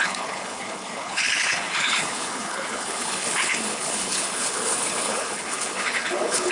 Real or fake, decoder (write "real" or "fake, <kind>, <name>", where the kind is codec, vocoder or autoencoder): fake, codec, HILCodec